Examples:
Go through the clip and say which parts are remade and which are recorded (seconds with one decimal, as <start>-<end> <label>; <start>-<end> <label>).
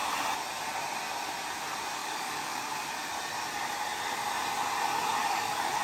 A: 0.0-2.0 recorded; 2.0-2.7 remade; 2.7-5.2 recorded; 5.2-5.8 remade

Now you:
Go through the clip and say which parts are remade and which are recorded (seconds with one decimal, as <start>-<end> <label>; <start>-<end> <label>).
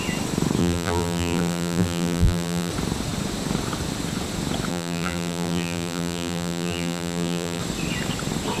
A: 0.0-0.6 recorded; 0.6-2.7 remade; 2.7-4.7 recorded; 4.7-7.6 remade; 7.6-8.6 recorded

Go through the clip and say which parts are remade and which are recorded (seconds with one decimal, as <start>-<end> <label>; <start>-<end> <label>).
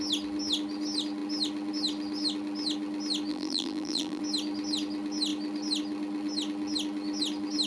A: 0.0-3.3 recorded; 3.3-4.2 remade; 4.2-7.7 recorded